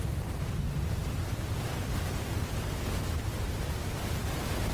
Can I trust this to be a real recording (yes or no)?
yes